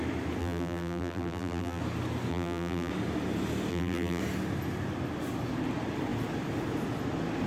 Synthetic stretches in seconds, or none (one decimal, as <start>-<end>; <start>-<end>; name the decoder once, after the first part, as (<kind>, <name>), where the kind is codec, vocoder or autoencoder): 0.4-1.8 (vocoder, BigVGAN v2); 2.3-2.9; 3.7-4.2